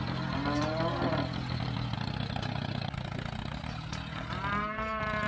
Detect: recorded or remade recorded